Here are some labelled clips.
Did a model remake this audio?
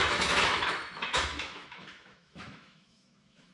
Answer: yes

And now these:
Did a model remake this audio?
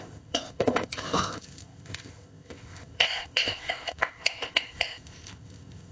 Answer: yes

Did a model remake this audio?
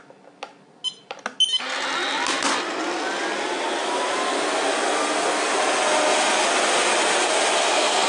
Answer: no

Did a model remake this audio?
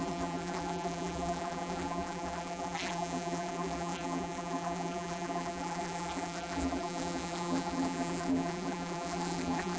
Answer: yes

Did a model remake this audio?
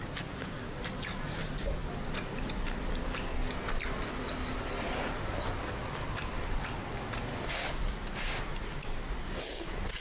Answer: no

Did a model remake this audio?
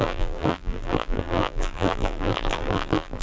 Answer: yes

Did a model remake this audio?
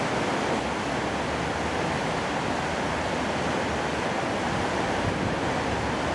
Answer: no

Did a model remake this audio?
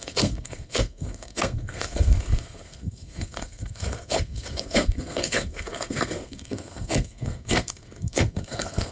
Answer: yes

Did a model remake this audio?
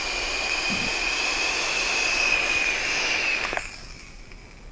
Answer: no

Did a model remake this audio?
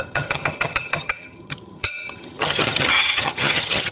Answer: yes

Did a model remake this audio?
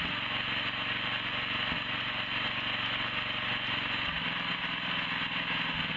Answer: no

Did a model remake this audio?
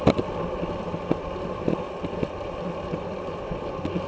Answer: no